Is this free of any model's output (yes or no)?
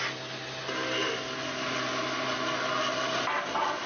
yes